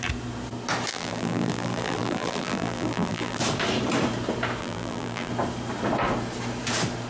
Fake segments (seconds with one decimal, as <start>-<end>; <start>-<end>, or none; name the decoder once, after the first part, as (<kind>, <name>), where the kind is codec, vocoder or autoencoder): 0.9-3.4 (vocoder, BigVGAN v2); 4.6-5.3